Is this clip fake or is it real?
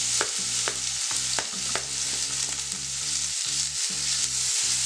real